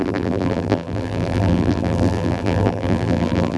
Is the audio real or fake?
fake